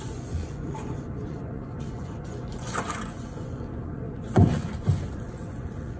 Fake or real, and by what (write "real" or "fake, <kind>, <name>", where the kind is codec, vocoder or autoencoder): fake, vocoder, Vocos